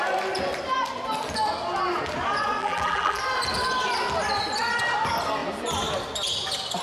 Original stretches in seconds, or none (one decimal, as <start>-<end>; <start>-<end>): 0.0-2.6; 3.2-6.8